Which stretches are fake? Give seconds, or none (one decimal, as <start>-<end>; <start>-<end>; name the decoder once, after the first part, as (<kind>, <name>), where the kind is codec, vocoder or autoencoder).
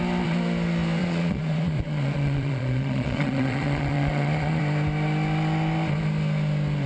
1.0-4.6 (vocoder, Vocos)